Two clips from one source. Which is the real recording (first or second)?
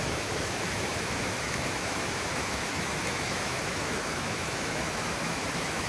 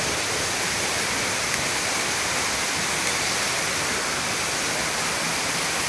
second